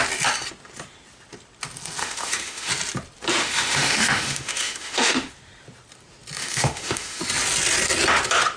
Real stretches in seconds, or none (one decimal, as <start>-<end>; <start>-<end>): 0.0-2.0; 2.7-3.4; 5.3-6.4; 7.2-8.6